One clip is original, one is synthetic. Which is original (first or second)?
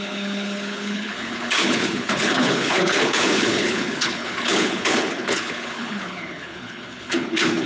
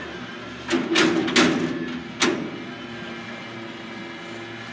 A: second